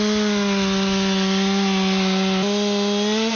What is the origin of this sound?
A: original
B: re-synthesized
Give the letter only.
A